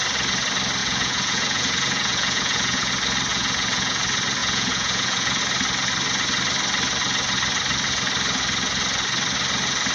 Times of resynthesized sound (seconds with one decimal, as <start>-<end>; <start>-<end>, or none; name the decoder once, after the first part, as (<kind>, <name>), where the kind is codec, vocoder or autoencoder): 0.8-2.9 (vocoder, Vocos); 3.3-4.0; 4.4-5.4